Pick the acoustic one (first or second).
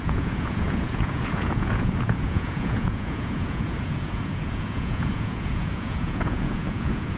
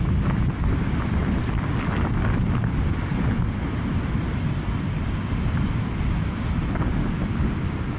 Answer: second